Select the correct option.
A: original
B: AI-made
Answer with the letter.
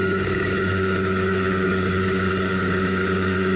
B